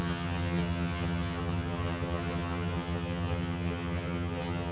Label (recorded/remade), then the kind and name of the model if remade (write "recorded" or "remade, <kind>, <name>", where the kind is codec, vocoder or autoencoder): remade, vocoder, HiFi-GAN